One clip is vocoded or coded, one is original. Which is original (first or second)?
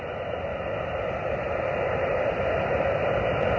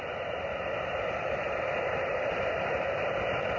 first